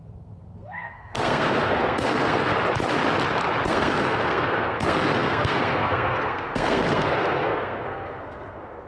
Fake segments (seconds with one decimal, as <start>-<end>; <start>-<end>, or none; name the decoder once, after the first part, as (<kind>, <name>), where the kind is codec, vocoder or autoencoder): 0.0-2.5 (codec, SNAC); 3.7-8.9